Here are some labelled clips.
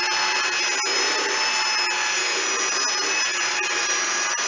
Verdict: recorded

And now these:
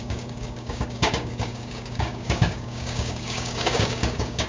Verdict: remade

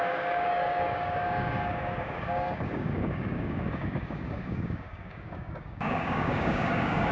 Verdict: remade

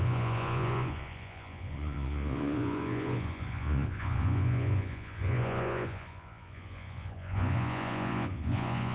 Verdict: remade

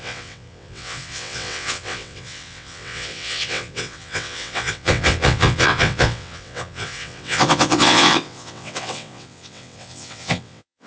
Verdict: remade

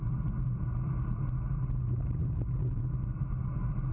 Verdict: recorded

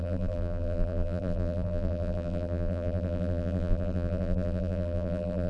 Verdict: remade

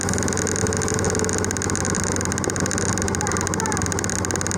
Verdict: recorded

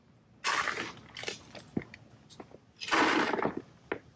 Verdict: recorded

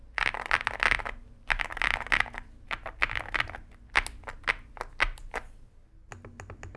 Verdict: recorded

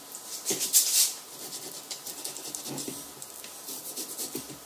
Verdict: recorded